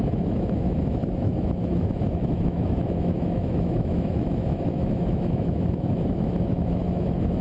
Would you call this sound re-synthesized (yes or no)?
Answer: yes